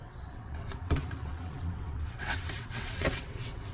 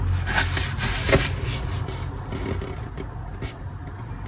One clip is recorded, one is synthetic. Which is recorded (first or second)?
second